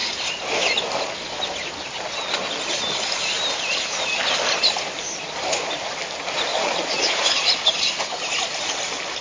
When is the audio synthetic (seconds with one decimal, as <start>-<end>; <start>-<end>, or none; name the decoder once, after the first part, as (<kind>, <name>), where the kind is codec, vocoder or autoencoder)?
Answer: 6.5-7.8 (vocoder, Vocos)